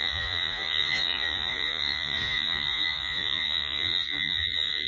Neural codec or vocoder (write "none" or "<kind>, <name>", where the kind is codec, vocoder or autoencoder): vocoder, Vocos